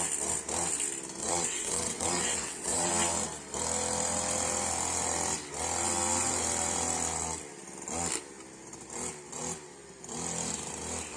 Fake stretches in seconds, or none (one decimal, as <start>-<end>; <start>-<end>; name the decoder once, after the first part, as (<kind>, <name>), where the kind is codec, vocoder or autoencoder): 1.2-2.9 (vocoder, WaveNeXt)